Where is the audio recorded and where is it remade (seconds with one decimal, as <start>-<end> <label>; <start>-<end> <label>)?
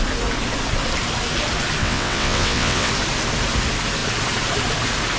0.0-1.8 recorded; 1.8-2.9 remade; 2.9-5.2 recorded